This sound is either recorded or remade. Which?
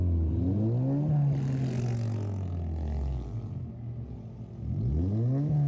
recorded